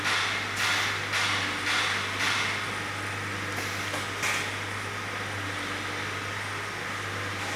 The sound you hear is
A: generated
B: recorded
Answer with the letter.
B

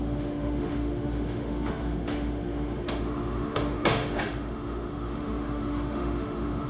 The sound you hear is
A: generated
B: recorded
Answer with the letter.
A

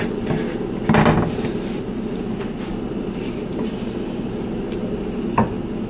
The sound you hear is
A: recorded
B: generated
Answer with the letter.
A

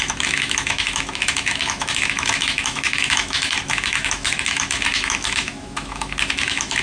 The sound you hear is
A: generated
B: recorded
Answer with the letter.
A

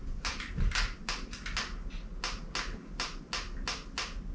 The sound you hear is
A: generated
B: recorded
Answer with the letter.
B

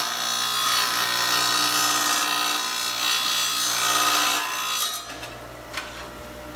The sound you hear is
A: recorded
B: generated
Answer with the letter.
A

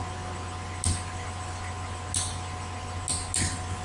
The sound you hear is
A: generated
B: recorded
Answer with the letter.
B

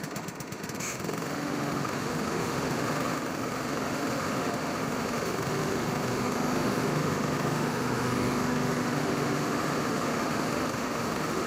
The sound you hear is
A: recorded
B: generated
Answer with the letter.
B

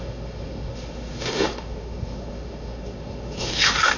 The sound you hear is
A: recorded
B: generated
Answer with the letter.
B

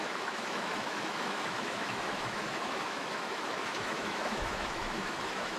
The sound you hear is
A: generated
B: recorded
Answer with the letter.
A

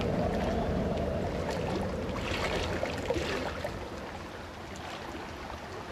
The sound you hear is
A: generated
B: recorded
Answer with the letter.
B